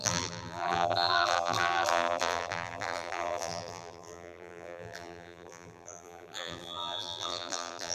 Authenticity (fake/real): fake